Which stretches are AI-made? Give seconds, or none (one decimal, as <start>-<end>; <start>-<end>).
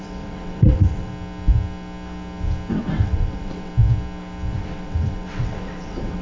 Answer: 0.0-1.1; 2.7-3.7; 4.6-6.2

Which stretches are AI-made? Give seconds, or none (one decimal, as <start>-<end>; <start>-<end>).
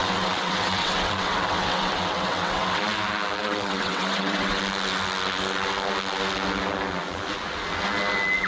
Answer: 0.0-2.8; 3.4-4.6